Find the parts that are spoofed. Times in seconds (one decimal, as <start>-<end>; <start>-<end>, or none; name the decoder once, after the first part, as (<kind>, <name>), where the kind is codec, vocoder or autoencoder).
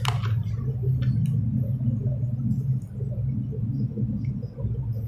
none